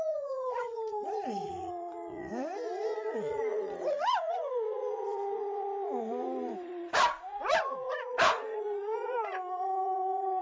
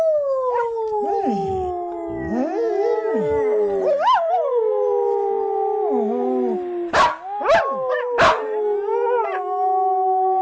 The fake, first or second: first